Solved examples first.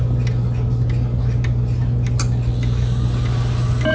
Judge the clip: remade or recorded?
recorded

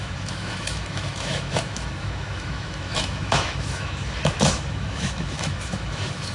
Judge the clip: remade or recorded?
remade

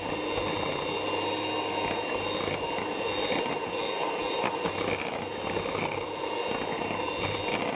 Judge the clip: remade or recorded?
recorded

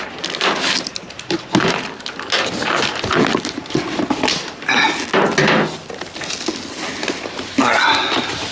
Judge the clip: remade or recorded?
recorded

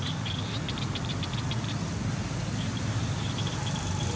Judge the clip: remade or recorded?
recorded